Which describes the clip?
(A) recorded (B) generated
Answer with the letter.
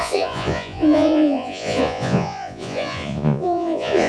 B